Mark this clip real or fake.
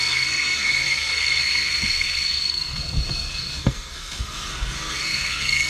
fake